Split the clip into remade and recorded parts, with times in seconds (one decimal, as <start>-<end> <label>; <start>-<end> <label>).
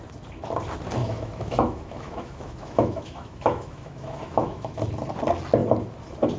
0.0-1.0 recorded; 1.0-4.8 remade; 4.8-6.4 recorded